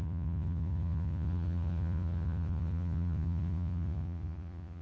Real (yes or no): no